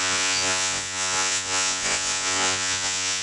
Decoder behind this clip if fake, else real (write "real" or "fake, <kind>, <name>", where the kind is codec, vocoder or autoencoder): fake, vocoder, Vocos